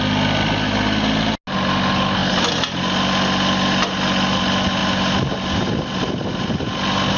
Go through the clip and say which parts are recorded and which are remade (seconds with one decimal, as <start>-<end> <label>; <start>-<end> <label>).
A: 0.0-7.2 recorded